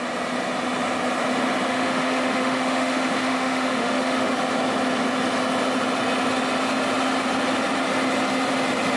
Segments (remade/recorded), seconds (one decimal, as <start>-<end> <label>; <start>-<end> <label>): 0.0-1.7 recorded; 1.7-4.3 remade; 4.3-9.0 recorded